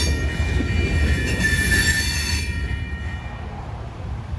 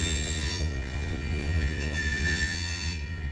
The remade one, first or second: second